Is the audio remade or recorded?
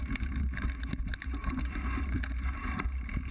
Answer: remade